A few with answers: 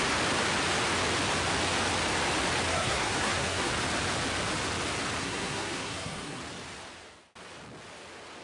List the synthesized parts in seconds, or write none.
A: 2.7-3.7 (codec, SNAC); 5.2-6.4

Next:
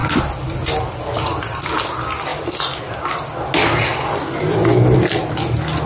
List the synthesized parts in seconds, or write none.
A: none

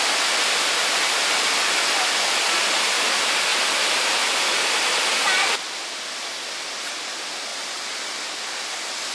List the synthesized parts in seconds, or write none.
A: none

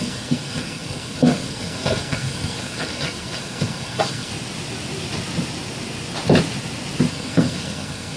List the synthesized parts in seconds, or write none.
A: 0.0-4.3 (codec, SNAC); 7.1-8.2

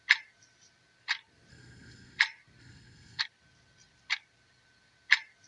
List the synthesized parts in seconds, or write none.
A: 1.5-2.2 (codec, SNAC); 2.6-3.2

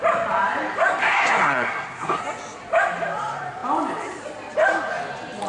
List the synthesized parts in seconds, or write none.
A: 1.0-2.2 (codec, SNAC)